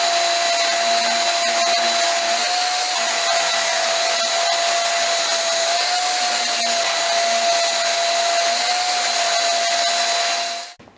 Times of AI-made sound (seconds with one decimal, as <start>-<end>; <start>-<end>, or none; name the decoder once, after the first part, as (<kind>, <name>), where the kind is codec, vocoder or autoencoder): none